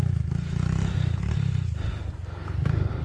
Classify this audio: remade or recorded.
recorded